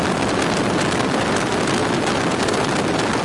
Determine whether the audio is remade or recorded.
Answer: recorded